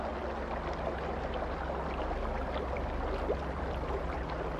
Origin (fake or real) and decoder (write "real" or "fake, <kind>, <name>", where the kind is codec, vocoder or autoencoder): real